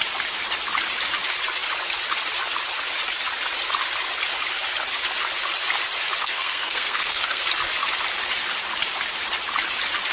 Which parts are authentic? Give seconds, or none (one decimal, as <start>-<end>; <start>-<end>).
0.0-6.2; 7.4-10.1